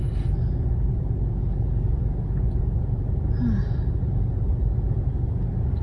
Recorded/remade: recorded